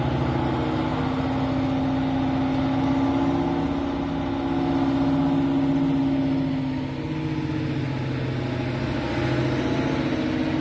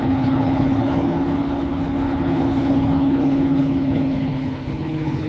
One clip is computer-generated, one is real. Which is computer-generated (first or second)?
second